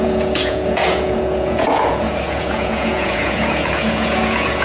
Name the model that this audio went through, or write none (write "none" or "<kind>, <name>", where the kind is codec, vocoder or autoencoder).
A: vocoder, Vocos